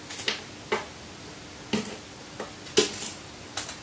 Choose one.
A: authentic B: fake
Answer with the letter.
A